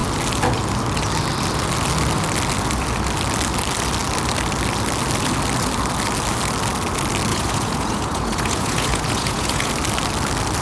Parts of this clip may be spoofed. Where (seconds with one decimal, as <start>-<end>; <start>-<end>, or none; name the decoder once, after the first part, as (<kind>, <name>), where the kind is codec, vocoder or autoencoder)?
7.3-9.7 (vocoder, Vocos)